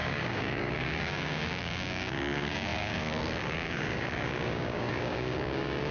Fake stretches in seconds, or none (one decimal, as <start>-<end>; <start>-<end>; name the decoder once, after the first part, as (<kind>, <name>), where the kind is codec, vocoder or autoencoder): 0.0-5.9 (codec, DAC)